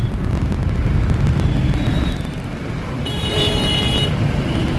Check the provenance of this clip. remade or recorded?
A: recorded